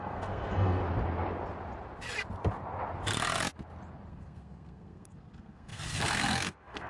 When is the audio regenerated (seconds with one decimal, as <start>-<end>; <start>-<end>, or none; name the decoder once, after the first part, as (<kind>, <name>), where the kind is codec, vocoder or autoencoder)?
0.0-0.8 (codec, SNAC); 4.1-6.9